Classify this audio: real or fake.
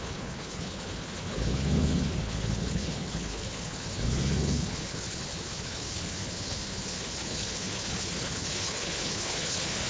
fake